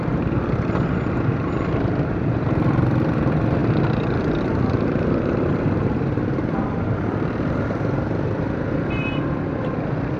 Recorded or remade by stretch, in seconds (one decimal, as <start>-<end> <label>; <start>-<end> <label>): 0.0-10.2 remade